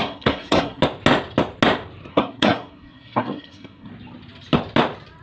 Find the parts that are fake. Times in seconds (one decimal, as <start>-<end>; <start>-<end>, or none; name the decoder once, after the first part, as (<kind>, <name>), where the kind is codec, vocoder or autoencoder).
0.0-0.8 (codec, SNAC); 2.1-3.9